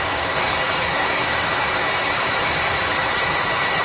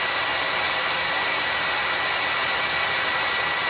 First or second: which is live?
second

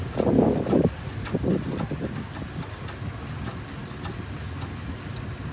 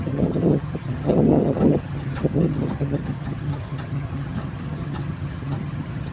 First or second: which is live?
first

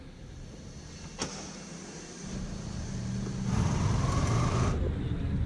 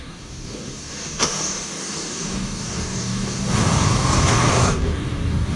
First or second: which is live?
first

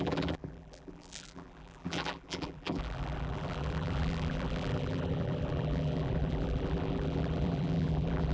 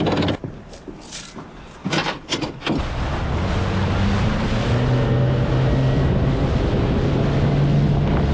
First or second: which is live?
second